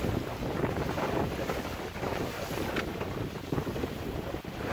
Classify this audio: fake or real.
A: real